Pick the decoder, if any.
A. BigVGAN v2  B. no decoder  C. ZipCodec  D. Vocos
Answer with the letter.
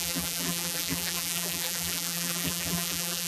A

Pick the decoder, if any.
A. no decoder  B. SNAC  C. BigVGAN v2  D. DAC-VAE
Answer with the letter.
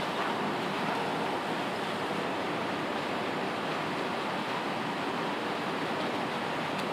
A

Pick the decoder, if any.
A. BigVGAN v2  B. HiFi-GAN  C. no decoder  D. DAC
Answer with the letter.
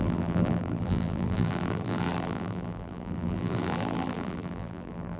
A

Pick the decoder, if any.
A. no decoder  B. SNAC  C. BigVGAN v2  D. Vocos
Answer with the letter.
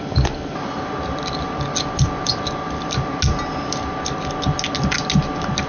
A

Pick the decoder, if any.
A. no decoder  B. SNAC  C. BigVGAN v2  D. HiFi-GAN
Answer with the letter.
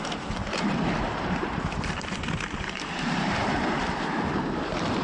C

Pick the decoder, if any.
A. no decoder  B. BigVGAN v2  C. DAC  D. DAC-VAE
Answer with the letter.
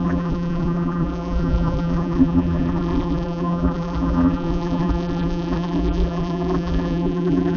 B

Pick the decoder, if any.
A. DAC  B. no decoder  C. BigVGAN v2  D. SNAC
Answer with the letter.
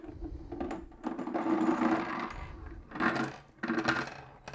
B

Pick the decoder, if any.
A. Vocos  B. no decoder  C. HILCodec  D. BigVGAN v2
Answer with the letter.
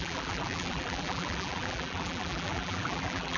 D